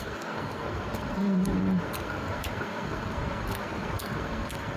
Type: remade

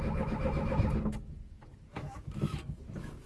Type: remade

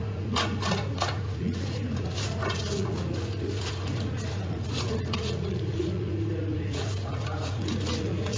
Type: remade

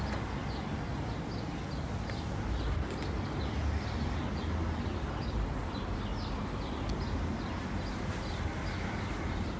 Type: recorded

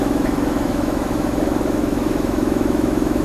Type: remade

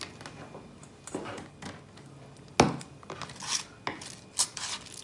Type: recorded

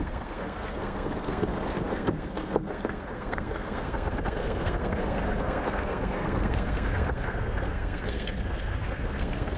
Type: remade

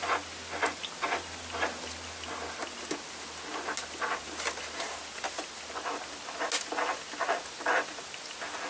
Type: recorded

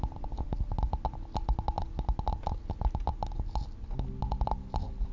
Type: recorded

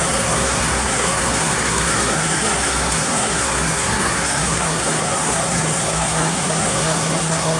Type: remade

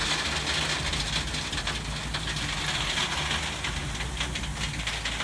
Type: recorded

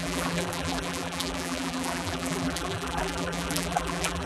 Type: remade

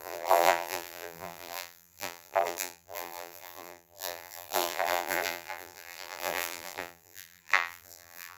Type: remade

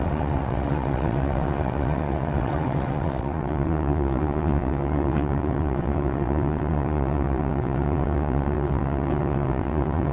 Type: remade